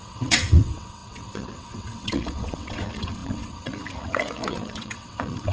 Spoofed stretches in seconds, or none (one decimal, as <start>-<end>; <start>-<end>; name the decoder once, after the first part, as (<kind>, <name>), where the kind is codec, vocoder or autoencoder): 0.0-5.5 (vocoder, WaveNeXt)